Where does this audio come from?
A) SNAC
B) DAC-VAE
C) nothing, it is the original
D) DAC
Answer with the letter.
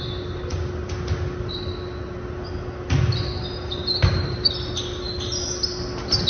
C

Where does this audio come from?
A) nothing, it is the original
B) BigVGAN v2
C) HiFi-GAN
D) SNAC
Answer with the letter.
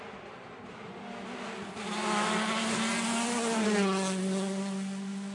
A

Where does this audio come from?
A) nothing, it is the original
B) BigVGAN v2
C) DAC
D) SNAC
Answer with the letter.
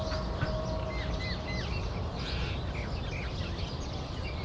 A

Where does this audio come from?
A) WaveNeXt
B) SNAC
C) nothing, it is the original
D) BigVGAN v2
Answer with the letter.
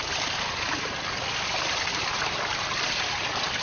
C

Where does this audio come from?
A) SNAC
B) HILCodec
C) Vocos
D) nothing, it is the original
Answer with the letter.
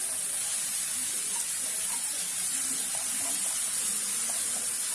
D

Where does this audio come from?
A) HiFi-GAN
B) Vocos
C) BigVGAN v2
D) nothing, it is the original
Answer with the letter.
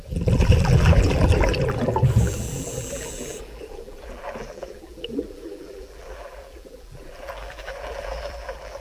C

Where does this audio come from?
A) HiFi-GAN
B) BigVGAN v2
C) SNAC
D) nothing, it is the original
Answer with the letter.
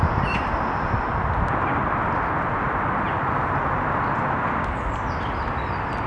D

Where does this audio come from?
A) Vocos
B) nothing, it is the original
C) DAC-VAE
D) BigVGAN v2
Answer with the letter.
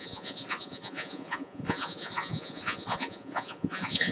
A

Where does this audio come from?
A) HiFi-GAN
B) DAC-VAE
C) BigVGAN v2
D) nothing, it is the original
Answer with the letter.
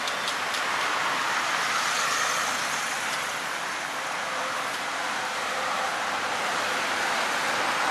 D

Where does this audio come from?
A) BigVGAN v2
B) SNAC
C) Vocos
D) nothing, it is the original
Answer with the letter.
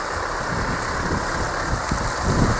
D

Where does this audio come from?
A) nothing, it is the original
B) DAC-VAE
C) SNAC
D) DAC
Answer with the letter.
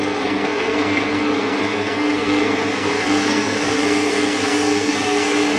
C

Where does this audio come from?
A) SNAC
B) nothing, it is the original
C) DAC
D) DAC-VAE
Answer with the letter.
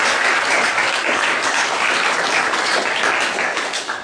C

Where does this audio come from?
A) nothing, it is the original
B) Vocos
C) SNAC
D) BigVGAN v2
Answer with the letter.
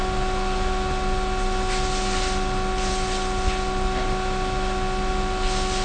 A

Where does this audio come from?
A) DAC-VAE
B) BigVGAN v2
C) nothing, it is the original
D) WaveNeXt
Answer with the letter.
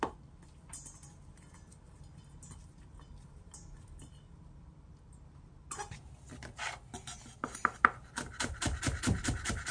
C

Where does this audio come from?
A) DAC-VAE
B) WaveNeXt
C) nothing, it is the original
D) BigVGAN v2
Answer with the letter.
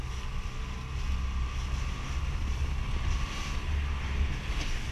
C